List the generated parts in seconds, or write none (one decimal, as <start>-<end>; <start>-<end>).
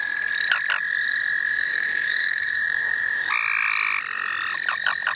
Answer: 1.5-3.3